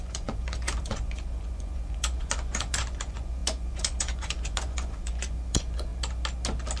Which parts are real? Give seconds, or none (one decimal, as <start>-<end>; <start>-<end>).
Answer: 5.9-6.8